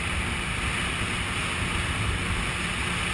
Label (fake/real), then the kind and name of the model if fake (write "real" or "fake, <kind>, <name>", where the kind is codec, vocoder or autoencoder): real